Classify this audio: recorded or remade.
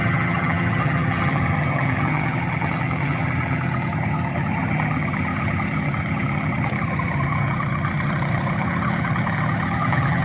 remade